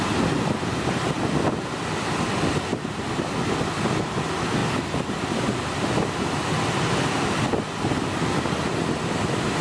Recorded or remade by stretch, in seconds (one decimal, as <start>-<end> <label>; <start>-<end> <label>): 0.0-2.7 recorded; 2.7-3.3 remade; 3.3-9.6 recorded